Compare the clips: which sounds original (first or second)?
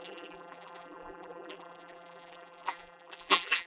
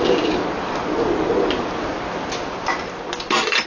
second